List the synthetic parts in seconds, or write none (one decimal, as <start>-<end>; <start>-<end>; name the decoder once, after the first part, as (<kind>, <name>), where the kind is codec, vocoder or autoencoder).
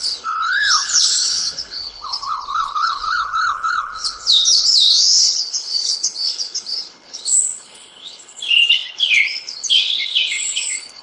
0.0-11.0 (codec, HILCodec)